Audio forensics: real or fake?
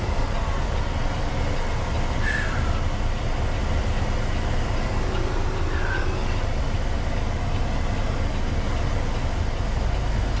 real